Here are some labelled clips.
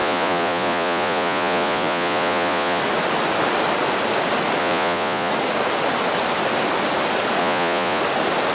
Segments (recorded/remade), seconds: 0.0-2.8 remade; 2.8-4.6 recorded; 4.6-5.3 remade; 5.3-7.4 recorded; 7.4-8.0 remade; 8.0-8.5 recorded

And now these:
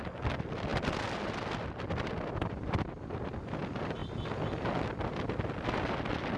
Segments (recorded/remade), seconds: 0.0-6.4 recorded

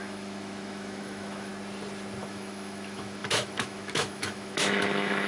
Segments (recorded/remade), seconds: 0.0-1.5 remade; 1.5-2.2 recorded; 2.2-5.3 remade

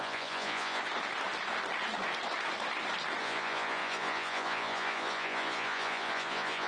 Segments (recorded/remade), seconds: 0.0-0.8 remade; 0.8-3.2 recorded; 3.2-6.7 remade